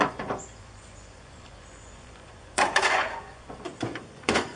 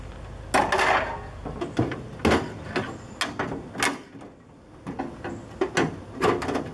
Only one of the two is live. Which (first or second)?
second